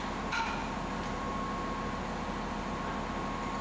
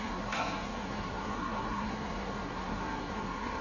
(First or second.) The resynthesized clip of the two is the second